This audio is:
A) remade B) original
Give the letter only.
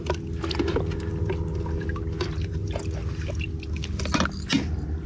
B